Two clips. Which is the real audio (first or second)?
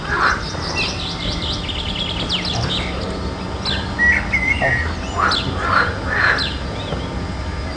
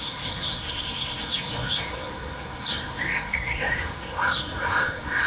first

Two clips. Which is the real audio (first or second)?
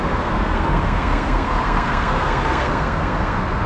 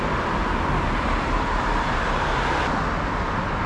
second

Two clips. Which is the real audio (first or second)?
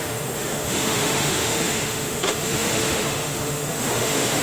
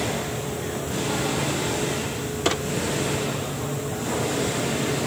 second